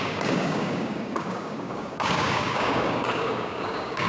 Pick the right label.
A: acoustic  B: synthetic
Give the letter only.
B